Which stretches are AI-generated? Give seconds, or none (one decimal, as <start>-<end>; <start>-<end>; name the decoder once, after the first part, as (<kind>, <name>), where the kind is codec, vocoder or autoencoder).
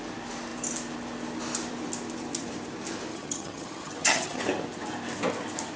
3.1-4.4 (vocoder, HiFi-GAN)